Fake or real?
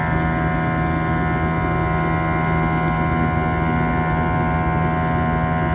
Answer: real